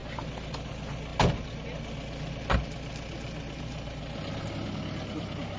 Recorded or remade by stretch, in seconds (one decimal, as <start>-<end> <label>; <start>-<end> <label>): 0.0-5.6 recorded